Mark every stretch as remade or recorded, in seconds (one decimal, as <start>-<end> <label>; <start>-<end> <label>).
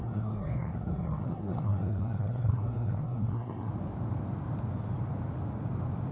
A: 0.0-3.7 remade; 3.7-6.1 recorded